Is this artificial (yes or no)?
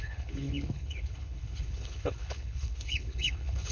yes